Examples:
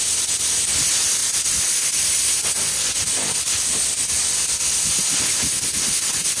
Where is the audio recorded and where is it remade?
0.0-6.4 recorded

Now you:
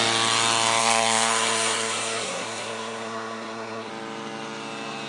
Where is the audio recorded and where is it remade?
0.0-0.8 recorded; 0.8-3.9 remade; 3.9-5.1 recorded